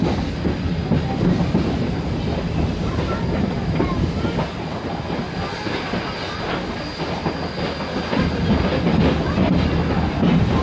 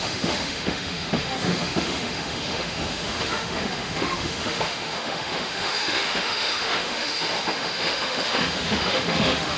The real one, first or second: first